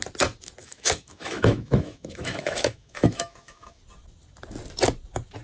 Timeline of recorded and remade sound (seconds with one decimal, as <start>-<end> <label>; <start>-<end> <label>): 0.0-0.6 recorded; 0.6-3.8 remade; 3.8-5.4 recorded